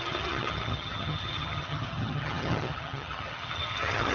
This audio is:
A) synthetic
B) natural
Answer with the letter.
A